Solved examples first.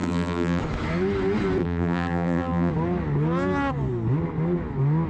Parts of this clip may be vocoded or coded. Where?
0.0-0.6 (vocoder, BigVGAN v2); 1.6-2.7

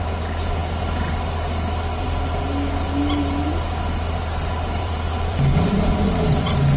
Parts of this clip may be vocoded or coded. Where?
4.8-6.8 (vocoder, BigVGAN v2)

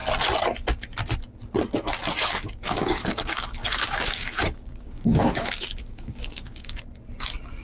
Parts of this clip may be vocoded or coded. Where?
2.2-6.8 (codec, DAC)

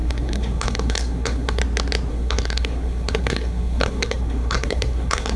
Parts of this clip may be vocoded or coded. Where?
0.0-1.6 (codec, SNAC); 2.1-5.4

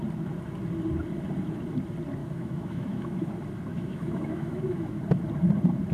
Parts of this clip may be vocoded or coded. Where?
2.2-3.3 (autoencoder, DAC-VAE); 3.7-5.0

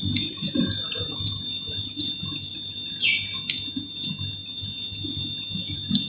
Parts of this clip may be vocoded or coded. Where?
none

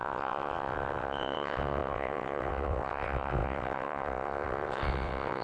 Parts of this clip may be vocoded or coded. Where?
0.0-5.4 (vocoder, WaveNeXt)